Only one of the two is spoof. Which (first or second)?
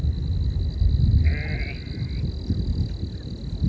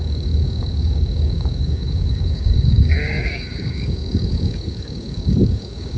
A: second